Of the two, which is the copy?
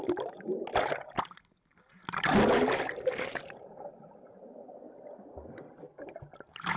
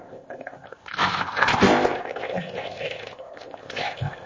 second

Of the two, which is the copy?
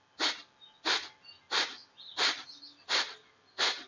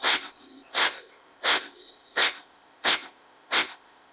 second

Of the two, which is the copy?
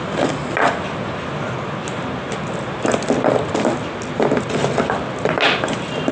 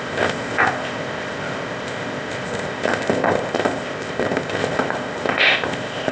second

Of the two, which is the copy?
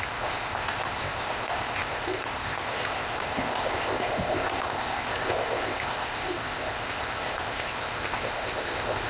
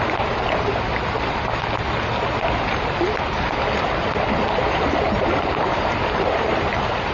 first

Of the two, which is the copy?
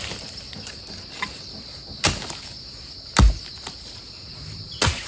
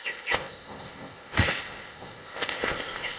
second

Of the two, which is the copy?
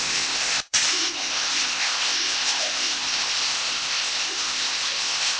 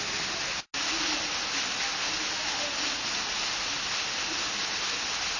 first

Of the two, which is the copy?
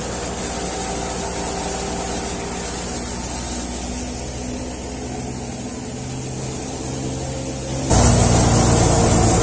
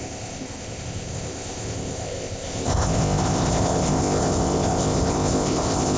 second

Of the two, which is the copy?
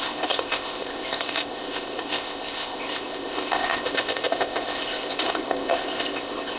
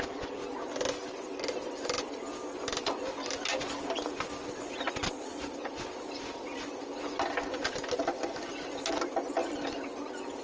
first